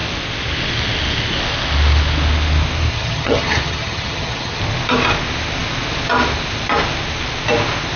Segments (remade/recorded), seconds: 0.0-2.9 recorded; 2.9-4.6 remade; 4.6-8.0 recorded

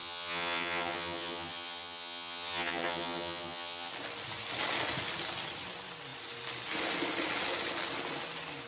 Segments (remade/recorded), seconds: 0.0-3.9 remade; 3.9-8.7 recorded

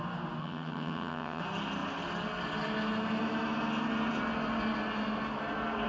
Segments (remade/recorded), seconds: 0.0-0.4 recorded; 0.4-1.4 remade; 1.4-5.9 recorded

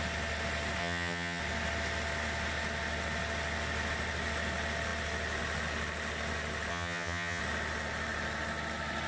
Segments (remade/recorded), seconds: 0.0-0.8 recorded; 0.8-1.4 remade; 1.4-6.7 recorded; 6.7-7.4 remade; 7.4-9.1 recorded

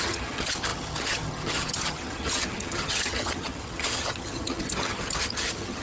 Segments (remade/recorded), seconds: 0.0-5.8 remade

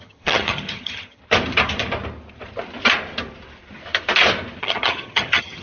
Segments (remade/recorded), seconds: 0.0-1.2 remade; 1.2-4.6 recorded; 4.6-5.6 remade